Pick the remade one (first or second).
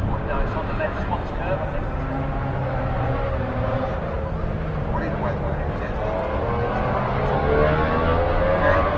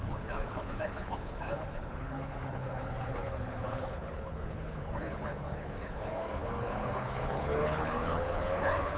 second